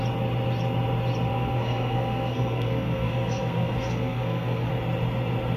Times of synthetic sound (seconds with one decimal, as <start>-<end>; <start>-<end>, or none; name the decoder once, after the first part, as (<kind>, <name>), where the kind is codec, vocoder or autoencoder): 1.3-4.7 (codec, SNAC)